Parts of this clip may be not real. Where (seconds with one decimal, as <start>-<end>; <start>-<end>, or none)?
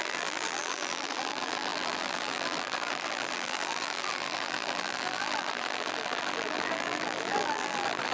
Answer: 0.0-8.1